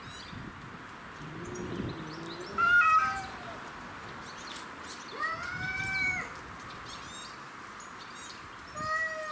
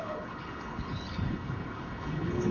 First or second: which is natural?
first